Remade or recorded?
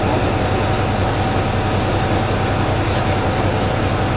recorded